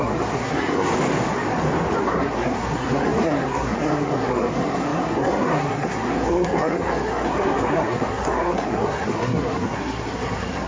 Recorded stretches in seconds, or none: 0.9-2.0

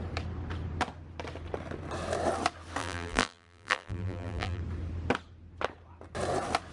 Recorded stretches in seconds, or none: 0.0-2.8; 4.6-6.7

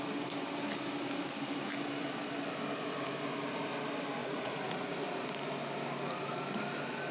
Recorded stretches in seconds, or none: 0.0-4.2; 4.9-7.1

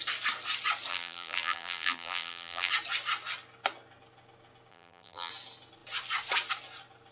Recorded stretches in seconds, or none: 0.0-0.9; 2.7-4.7; 5.3-7.1